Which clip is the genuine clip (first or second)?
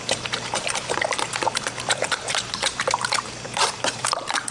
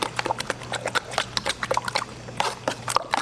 second